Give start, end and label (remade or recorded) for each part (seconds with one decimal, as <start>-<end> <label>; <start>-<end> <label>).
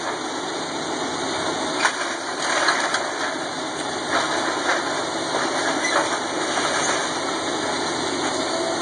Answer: 0.0-1.1 recorded; 1.1-4.0 remade; 4.0-4.7 recorded; 4.7-5.5 remade; 5.5-8.8 recorded